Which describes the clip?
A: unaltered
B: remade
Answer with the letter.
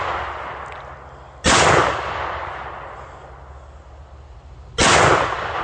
A